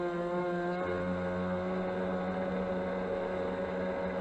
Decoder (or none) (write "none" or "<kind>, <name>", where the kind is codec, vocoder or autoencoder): none